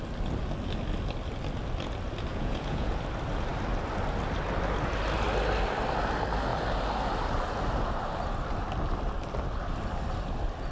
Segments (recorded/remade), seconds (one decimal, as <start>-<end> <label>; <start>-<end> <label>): 0.0-2.3 recorded; 2.3-2.9 remade; 2.9-10.7 recorded